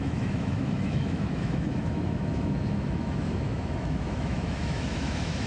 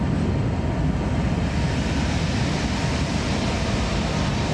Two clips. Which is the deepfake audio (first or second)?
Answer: first